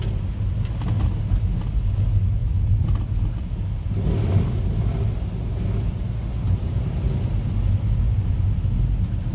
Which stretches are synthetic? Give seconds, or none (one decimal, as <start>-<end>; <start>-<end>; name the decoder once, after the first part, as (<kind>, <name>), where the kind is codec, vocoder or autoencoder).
none